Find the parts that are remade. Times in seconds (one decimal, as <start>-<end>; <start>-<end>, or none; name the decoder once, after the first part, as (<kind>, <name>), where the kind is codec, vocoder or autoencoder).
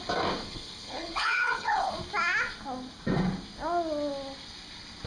0.4-1.9 (codec, HILCodec)